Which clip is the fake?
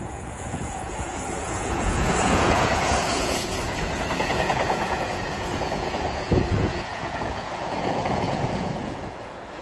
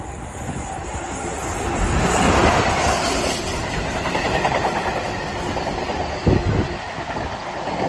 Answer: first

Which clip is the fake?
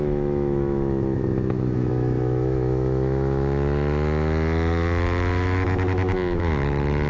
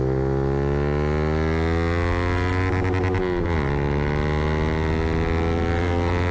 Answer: first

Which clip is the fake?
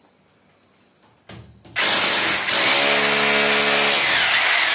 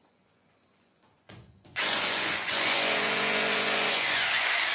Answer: second